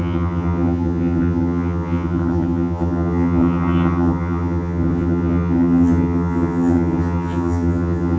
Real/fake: fake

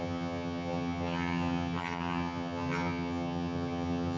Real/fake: fake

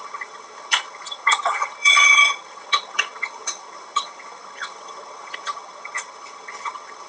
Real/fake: fake